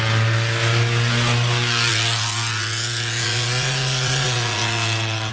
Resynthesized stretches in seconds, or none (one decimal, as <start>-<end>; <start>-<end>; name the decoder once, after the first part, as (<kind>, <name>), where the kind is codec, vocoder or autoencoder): 1.9-5.3 (vocoder, Vocos)